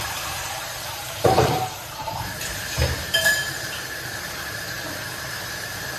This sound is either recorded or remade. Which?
remade